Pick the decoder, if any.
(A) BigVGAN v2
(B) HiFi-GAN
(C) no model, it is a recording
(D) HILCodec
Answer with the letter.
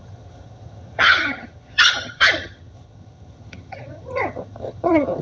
B